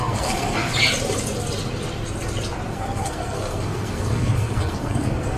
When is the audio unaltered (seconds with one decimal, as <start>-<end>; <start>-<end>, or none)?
0.7-2.7